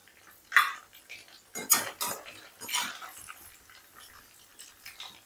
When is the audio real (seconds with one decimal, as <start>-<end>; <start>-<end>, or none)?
0.0-5.3

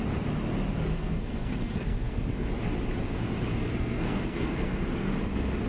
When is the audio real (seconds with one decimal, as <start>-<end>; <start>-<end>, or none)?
0.0-0.9; 2.5-3.6; 5.1-5.7

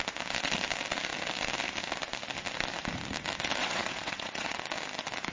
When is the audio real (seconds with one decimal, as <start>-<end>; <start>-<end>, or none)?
0.0-3.6; 4.6-5.3

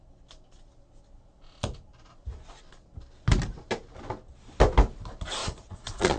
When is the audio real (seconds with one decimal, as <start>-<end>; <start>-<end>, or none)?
0.0-5.4

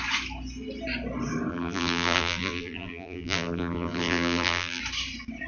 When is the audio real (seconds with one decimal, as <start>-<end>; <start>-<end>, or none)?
0.0-1.5; 4.8-5.5

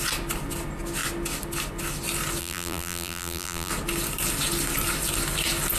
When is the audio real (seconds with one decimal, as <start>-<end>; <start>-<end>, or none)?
0.0-2.4; 3.7-5.8

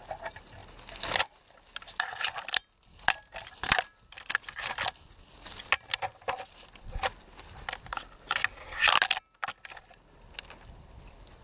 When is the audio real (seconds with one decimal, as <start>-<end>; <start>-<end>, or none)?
0.0-11.4

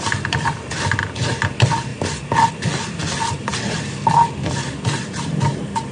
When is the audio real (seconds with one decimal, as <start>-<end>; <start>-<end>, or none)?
1.9-2.5